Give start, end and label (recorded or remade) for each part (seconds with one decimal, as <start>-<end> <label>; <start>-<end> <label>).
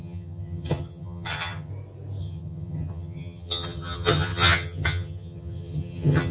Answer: 0.0-1.7 remade; 1.7-2.2 recorded; 2.2-6.3 remade